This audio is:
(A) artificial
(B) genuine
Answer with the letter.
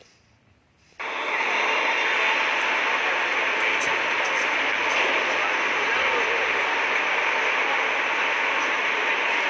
B